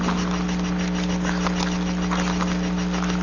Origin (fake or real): real